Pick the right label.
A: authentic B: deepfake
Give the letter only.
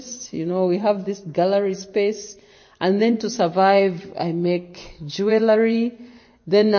B